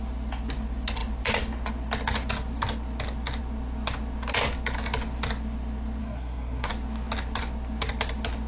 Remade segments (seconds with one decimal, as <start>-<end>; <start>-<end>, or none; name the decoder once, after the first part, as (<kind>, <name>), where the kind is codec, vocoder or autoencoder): 6.0-6.7 (codec, SNAC)